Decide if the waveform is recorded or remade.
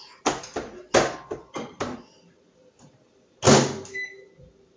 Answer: recorded